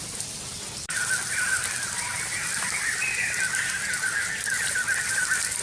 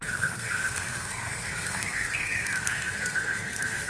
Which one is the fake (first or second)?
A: second